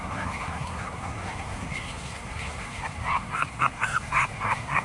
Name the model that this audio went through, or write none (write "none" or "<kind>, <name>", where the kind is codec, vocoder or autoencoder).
codec, SNAC